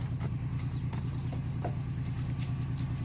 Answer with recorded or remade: recorded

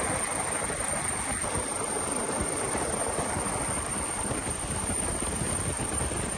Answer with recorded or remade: recorded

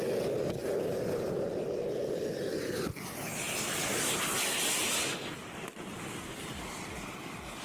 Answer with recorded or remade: recorded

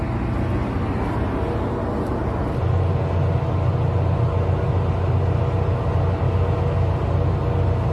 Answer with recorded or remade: recorded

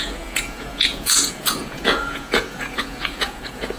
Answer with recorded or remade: remade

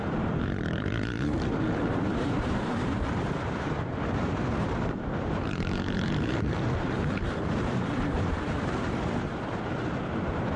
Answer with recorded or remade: remade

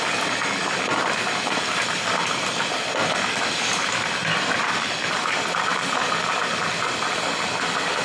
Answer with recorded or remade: recorded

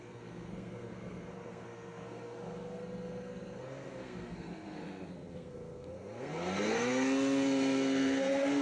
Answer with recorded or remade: remade